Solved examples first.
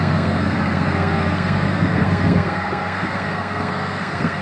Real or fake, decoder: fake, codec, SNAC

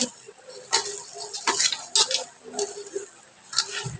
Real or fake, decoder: real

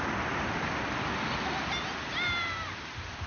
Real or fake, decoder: real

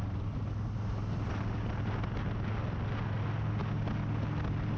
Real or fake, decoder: real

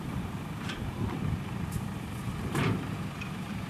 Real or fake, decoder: fake, vocoder, BigVGAN v2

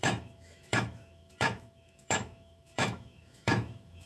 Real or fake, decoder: fake, autoencoder, DAC-VAE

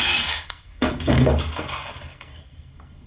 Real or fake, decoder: fake, codec, SNAC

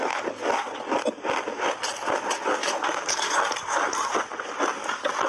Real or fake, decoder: real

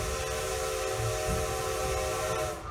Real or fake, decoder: real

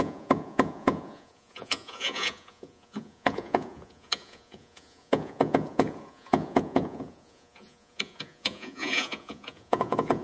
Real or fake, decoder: fake, vocoder, Vocos